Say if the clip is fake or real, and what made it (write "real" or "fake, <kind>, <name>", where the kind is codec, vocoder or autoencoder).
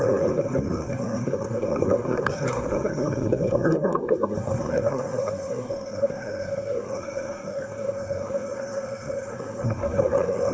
fake, codec, SNAC